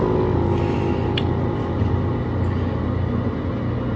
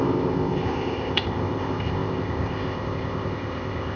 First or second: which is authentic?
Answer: first